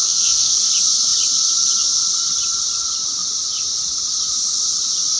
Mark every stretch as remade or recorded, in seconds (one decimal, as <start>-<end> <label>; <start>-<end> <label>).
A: 0.0-0.7 remade; 0.7-5.2 recorded